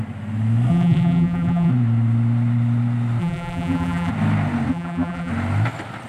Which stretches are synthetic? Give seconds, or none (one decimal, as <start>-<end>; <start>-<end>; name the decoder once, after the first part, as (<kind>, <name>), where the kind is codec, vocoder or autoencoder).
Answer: 0.7-1.7 (vocoder, BigVGAN v2); 3.2-4.1; 4.7-5.3